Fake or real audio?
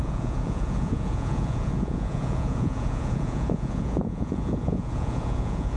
fake